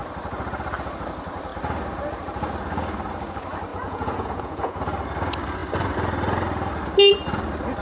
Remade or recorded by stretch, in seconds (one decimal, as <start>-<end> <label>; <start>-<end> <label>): 0.0-3.7 recorded; 3.7-4.8 remade; 4.8-7.8 recorded